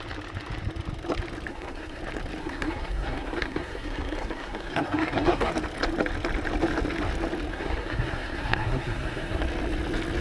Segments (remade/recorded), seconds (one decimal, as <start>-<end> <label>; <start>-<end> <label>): 0.0-1.5 recorded; 1.5-2.0 remade; 2.0-2.4 recorded; 2.4-5.5 remade; 5.5-7.5 recorded; 7.5-9.4 remade; 9.4-10.2 recorded